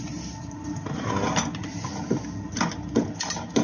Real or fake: real